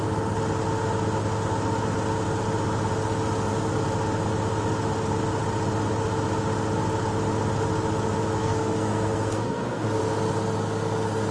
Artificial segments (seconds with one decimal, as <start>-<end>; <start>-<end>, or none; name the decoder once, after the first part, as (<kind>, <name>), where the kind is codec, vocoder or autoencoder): 8.4-10.0 (codec, SNAC)

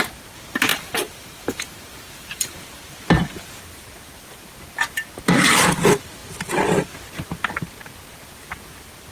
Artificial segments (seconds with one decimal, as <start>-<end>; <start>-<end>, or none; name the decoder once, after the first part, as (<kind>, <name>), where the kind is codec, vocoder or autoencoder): 0.7-2.6 (vocoder, BigVGAN v2)

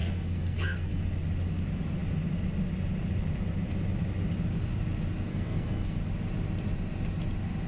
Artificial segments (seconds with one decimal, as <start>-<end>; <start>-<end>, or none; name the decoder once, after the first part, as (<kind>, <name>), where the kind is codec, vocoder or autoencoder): 0.0-1.0 (codec, SNAC); 5.3-6.0

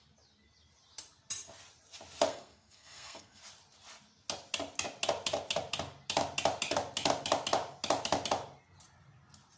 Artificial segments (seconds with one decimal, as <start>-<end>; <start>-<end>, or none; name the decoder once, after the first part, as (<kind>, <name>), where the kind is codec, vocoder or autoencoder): 2.3-3.4 (codec, SNAC)

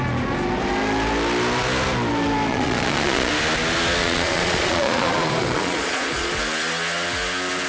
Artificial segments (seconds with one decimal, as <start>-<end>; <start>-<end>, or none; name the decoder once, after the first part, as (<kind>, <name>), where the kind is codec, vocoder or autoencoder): 2.5-3.3 (vocoder, Vocos); 4.0-6.4

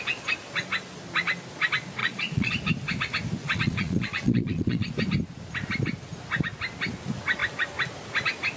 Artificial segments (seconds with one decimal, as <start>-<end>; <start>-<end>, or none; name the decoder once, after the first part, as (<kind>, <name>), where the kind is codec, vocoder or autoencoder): 2.0-2.5 (vocoder, Vocos); 3.4-4.9

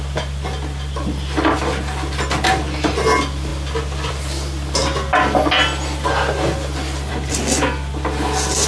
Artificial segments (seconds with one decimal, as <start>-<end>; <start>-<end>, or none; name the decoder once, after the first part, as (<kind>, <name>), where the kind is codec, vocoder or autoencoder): none